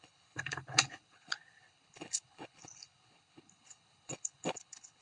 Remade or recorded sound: remade